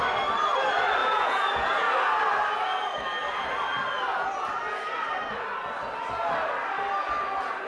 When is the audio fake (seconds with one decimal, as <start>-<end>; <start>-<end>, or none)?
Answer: 1.0-1.8